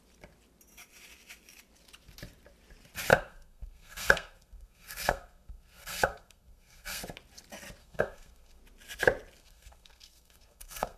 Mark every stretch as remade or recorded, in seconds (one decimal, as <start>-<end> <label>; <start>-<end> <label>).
0.0-3.1 recorded; 3.1-7.0 remade; 7.0-7.8 recorded; 7.8-8.6 remade; 8.6-9.4 recorded; 9.4-11.0 remade